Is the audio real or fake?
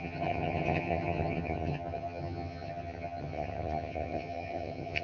fake